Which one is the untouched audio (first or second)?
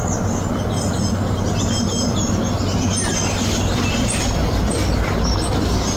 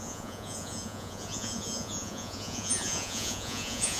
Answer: first